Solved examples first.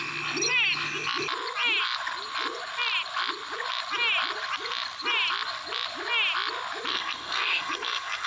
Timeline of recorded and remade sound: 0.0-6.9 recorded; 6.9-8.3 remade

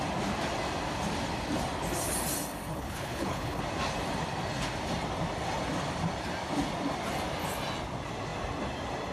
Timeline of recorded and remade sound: 0.0-2.7 recorded; 2.7-3.6 remade; 3.6-9.1 recorded